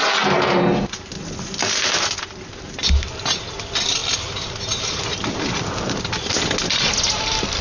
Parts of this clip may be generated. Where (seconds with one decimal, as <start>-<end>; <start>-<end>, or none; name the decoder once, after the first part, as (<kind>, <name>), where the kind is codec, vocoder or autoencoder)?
none